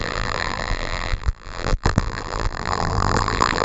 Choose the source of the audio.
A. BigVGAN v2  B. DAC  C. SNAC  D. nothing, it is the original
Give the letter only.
A